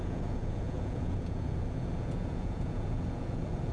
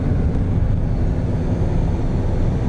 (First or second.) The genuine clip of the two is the second